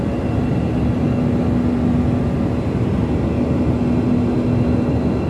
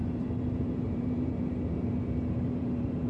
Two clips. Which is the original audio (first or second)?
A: first